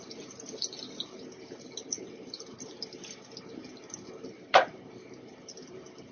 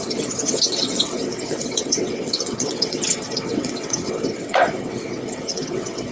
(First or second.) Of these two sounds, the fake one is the second